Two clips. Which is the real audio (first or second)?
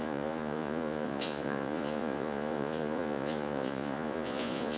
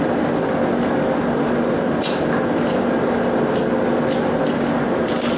second